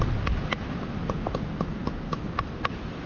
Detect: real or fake real